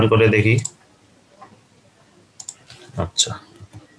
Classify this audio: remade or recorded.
recorded